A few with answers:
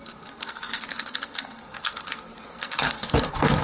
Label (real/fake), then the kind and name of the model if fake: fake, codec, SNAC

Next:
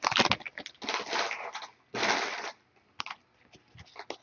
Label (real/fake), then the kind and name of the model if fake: real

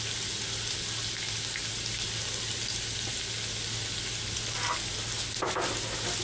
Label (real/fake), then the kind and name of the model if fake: real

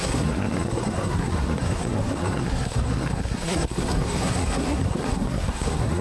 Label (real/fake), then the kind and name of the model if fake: fake, codec, SNAC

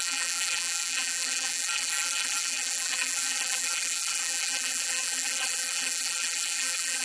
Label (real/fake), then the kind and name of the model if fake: fake, vocoder, BigVGAN v2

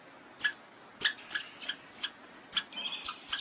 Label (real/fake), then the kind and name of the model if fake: real